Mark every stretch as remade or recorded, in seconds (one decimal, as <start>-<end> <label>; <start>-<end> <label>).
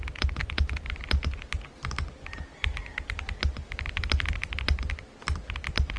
0.0-0.4 remade; 0.4-3.7 recorded; 3.7-6.0 remade